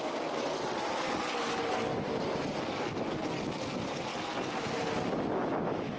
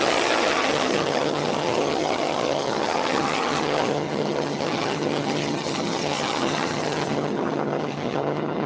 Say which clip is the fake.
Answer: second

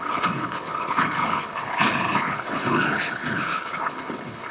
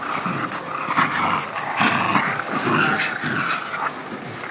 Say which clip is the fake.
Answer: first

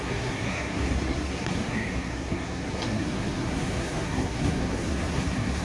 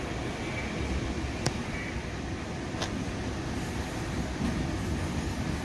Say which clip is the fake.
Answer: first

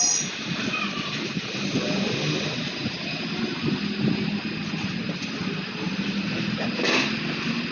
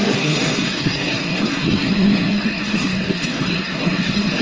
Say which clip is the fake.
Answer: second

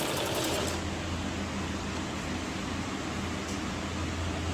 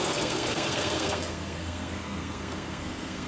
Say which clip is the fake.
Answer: second